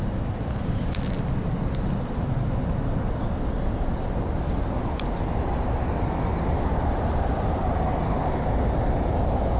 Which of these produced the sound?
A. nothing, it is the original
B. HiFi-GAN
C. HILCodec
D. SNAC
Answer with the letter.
A